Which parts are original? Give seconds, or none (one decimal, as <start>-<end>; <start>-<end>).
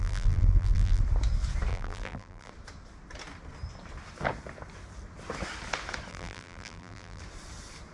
1.0-1.7; 2.5-6.1; 7.2-7.9